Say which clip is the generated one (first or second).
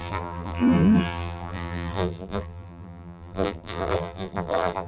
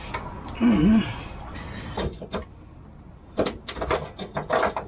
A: first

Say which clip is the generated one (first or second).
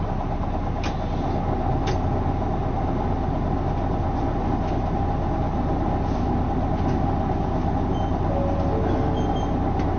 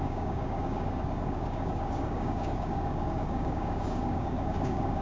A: second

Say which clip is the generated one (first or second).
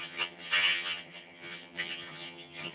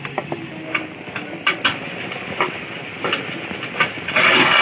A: first